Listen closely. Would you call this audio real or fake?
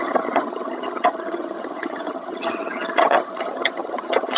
fake